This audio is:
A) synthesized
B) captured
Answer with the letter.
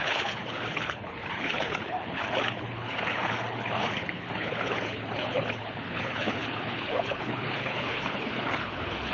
A